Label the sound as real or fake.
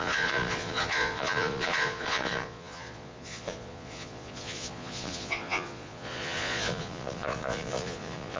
fake